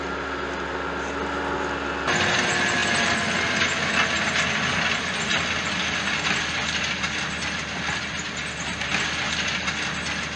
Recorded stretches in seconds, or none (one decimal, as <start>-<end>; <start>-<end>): 0.0-10.4